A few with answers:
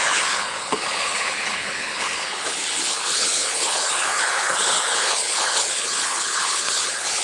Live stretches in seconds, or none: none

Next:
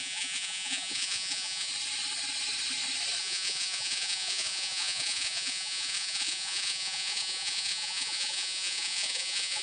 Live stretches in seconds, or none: 1.7-3.2